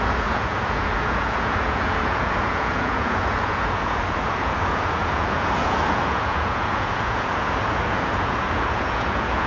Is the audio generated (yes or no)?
yes